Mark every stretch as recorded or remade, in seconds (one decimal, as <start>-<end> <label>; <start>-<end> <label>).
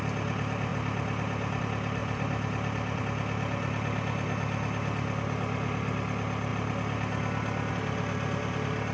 0.0-2.0 recorded; 2.0-3.0 remade; 3.0-8.9 recorded